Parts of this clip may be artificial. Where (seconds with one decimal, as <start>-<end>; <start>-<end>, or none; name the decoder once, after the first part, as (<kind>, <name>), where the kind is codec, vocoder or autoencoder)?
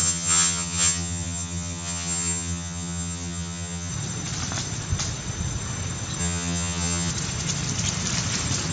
0.0-3.9 (vocoder, HiFi-GAN); 6.2-7.1